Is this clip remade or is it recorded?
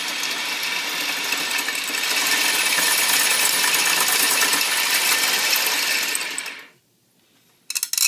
recorded